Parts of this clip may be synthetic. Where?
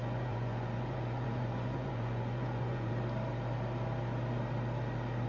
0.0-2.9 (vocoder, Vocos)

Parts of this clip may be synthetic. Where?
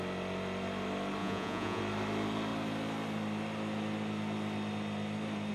1.2-1.8 (vocoder, Vocos)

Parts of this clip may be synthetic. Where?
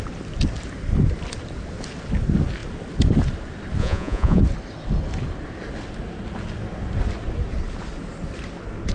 3.8-4.4 (vocoder, Vocos)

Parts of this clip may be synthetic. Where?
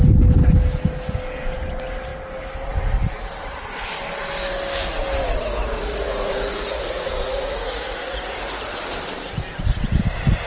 5.6-8.7 (vocoder, Vocos)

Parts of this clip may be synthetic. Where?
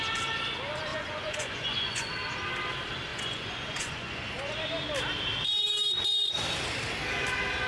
0.9-2.1 (vocoder, Vocos); 3.1-4.5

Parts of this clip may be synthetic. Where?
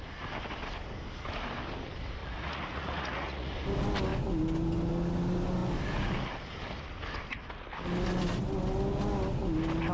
2.2-3.5 (vocoder, Vocos)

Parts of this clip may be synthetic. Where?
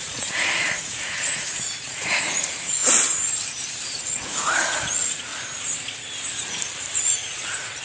0.0-2.8 (vocoder, Vocos); 4.0-5.3; 7.0-7.8